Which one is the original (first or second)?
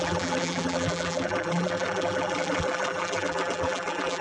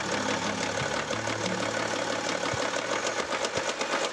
second